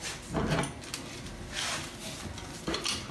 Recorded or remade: recorded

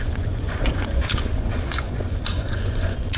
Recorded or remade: remade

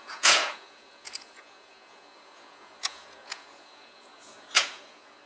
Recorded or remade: remade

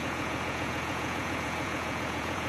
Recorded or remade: remade